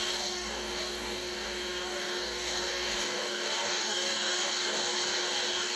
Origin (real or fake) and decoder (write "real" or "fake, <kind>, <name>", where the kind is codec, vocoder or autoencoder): fake, codec, DAC